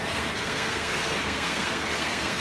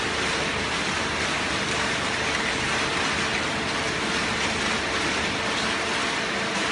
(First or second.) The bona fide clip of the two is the second